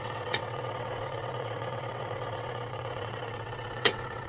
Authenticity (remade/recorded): remade